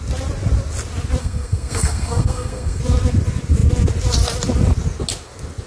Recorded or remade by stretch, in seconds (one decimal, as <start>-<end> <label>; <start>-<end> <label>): 0.0-1.2 recorded; 1.2-2.8 remade; 2.8-5.7 recorded